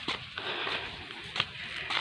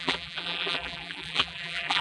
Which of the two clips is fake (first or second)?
second